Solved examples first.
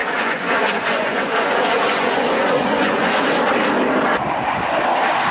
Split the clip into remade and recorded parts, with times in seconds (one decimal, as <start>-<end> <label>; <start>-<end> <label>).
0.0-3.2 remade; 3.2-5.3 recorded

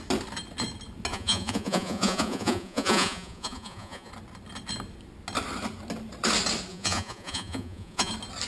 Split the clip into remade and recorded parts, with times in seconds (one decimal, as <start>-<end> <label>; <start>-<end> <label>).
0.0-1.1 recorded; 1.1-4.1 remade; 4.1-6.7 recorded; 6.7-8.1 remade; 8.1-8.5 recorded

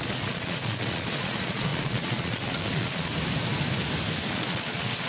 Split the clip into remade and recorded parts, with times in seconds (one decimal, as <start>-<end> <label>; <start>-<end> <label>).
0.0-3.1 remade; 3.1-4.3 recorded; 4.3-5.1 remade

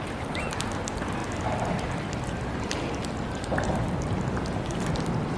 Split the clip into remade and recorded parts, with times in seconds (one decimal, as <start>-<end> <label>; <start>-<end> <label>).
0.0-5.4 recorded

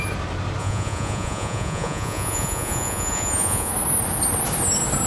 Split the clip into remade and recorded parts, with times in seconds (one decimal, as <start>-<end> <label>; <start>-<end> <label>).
0.0-0.6 recorded; 0.6-3.7 remade; 3.7-5.1 recorded

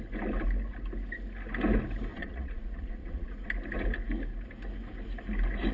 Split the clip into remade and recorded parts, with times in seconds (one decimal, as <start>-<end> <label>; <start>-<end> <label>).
0.0-2.1 recorded; 2.1-3.5 remade; 3.5-5.7 recorded